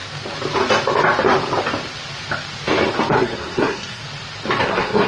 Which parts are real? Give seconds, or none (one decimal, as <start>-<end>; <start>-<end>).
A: 0.0-3.1; 4.0-4.6